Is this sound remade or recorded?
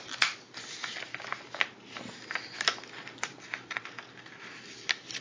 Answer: recorded